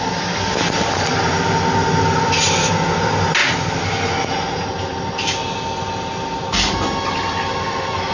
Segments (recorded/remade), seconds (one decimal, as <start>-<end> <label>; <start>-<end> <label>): 0.0-8.1 recorded